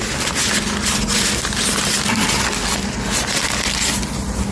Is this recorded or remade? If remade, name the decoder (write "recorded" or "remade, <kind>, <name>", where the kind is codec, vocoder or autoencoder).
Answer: recorded